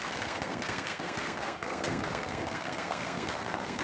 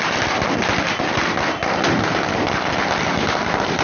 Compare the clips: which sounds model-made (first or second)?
first